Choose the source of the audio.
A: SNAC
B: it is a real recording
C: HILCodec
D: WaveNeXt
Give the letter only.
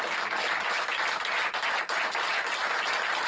B